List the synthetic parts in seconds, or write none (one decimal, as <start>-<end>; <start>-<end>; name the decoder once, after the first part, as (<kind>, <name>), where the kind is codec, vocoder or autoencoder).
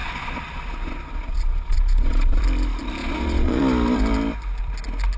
0.0-2.4 (vocoder, Vocos); 3.0-3.6